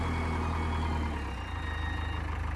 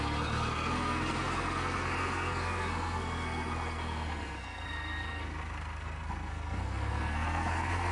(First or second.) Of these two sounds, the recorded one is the first